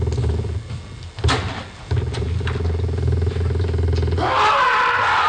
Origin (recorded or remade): recorded